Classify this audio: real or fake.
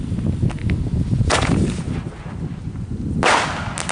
real